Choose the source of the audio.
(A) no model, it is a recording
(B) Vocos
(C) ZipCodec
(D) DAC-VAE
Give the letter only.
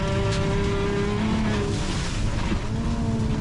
A